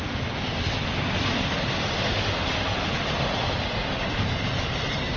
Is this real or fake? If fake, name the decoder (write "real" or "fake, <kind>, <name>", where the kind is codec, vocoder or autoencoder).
real